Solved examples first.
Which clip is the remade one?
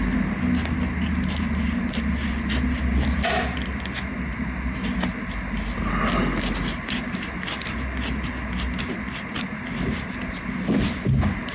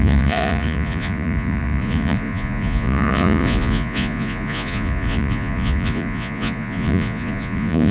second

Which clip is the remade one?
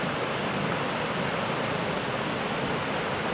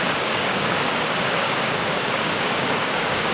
second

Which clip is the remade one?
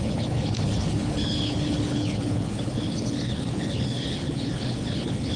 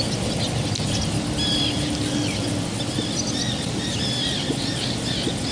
first